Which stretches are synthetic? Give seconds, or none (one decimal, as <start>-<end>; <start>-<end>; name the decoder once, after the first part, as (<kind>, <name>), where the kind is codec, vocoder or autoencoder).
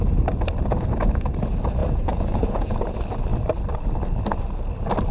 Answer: 1.8-2.7 (vocoder, Vocos)